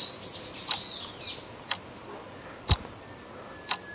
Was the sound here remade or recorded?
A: recorded